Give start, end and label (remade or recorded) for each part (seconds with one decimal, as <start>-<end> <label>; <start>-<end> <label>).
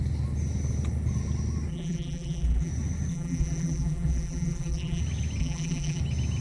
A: 0.0-1.7 recorded; 1.7-2.7 remade; 2.7-3.1 recorded; 3.1-5.0 remade; 5.0-5.4 recorded; 5.4-6.0 remade; 6.0-6.4 recorded